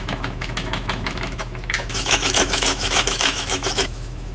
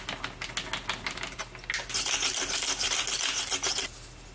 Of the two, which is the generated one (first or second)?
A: first